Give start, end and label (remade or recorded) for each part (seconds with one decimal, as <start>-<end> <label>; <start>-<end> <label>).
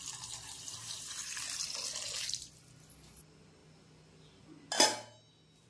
0.0-5.7 recorded